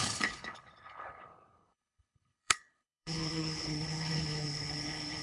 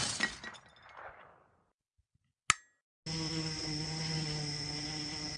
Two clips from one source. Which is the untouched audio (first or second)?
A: second